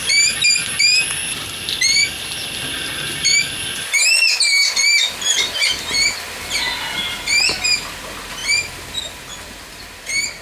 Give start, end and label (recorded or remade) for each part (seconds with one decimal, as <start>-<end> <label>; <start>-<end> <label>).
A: 0.0-8.4 recorded; 8.4-9.0 remade; 9.0-10.4 recorded